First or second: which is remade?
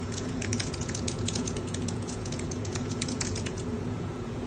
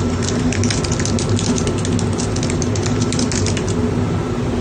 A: first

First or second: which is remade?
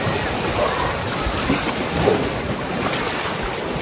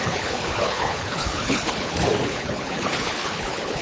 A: second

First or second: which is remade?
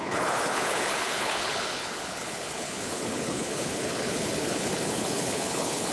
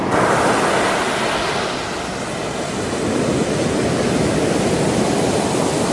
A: first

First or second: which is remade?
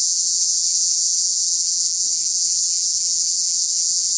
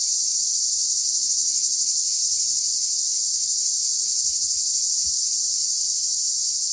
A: first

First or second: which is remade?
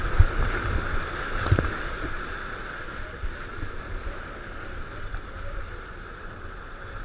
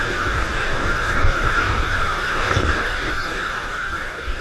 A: second